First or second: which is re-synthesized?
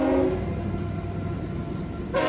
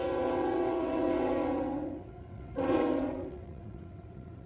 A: second